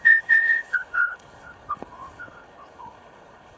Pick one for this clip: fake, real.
fake